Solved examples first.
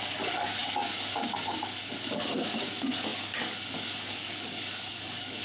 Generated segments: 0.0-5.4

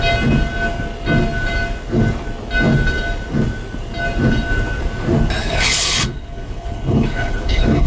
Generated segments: 5.4-7.9

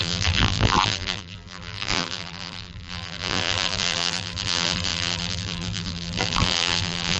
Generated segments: 0.0-7.2